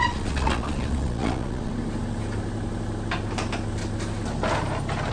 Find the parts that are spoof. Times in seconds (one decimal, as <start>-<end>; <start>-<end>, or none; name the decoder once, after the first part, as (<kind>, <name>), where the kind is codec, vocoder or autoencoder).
0.0-1.7 (vocoder, Vocos)

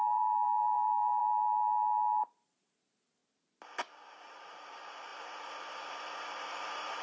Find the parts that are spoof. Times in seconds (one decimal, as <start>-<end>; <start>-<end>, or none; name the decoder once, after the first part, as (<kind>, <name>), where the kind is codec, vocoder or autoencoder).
0.0-1.2 (vocoder, BigVGAN v2); 2.2-3.2; 4.2-7.0

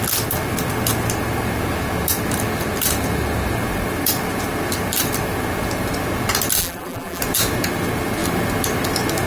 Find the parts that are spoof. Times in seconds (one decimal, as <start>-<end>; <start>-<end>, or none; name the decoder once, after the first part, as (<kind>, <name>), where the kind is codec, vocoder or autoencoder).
6.6-7.2 (vocoder, BigVGAN v2)

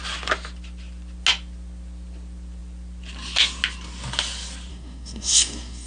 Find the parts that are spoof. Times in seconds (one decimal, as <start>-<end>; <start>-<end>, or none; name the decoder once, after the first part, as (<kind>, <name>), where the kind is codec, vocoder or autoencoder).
4.7-5.9 (codec, SNAC)

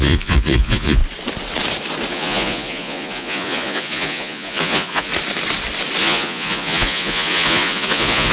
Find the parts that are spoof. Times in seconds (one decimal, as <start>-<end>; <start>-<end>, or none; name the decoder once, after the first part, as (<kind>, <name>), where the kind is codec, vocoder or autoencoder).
0.0-1.0 (vocoder, Vocos); 2.1-5.1; 6.0-8.3

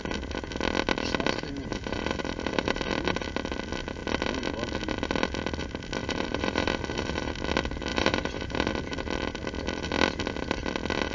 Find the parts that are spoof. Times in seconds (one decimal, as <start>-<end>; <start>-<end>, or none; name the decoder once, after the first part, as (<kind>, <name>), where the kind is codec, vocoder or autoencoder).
1.7-2.8 (vocoder, BigVGAN v2); 6.0-7.3; 7.9-8.7